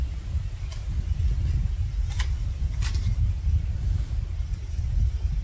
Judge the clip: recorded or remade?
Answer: recorded